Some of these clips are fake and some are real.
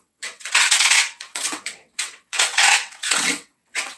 fake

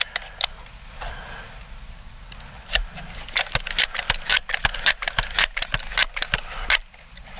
real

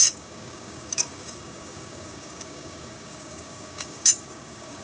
fake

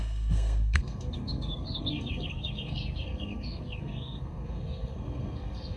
fake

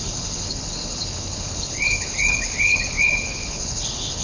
fake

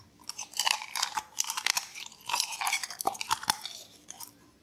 fake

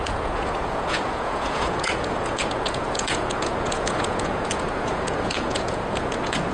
fake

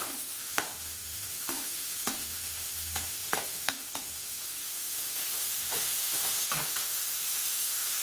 fake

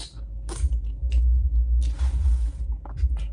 real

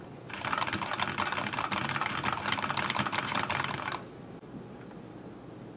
real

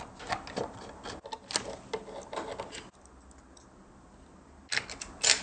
real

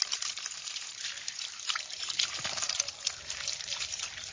fake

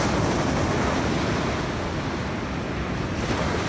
real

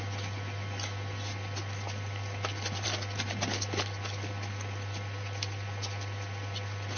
real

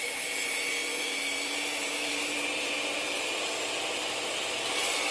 fake